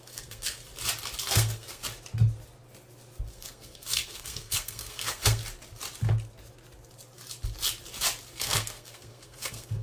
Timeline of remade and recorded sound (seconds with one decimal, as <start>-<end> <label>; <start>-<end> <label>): 0.0-0.6 remade; 0.6-1.2 recorded; 1.2-1.8 remade; 1.8-3.3 recorded; 3.3-5.4 remade; 5.4-8.4 recorded; 8.4-9.8 remade